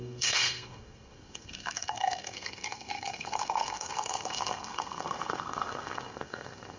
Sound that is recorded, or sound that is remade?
remade